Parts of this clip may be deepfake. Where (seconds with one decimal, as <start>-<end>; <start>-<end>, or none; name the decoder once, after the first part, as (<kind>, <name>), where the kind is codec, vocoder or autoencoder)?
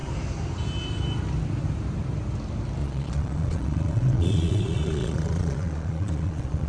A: 2.8-6.7 (vocoder, Vocos)